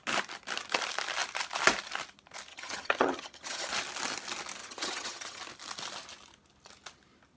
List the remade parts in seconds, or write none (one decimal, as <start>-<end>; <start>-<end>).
2.5-3.7; 4.6-5.4